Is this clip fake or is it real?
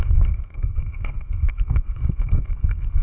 fake